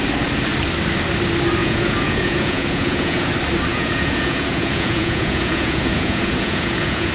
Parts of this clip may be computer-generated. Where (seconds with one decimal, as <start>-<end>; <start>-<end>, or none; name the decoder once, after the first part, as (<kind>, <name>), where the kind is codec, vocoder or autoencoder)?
1.6-3.3 (vocoder, Vocos); 3.7-7.1